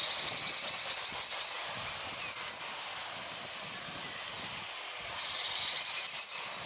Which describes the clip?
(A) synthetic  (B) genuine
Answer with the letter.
B